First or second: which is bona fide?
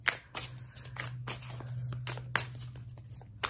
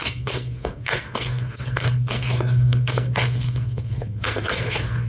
first